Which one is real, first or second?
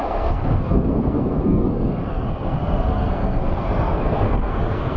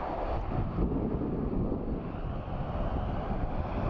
second